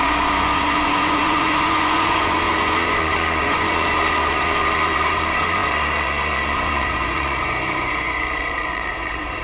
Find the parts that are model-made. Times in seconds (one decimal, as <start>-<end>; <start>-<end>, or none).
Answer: 0.0-9.4